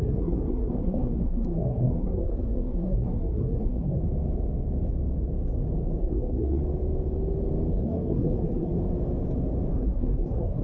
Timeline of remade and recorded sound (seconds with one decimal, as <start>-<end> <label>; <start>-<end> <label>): 0.0-4.0 remade; 4.0-6.0 recorded; 6.0-6.6 remade; 6.6-7.7 recorded; 7.7-8.7 remade; 8.7-9.7 recorded; 9.7-10.6 remade